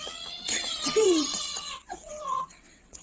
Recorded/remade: remade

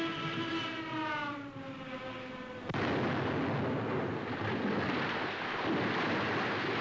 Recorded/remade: recorded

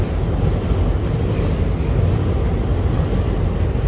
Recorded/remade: recorded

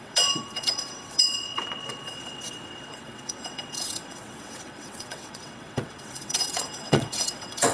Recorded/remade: remade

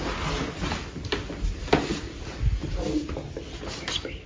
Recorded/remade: recorded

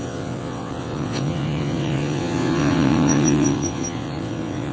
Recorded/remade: remade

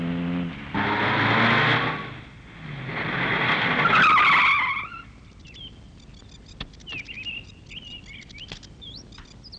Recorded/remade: recorded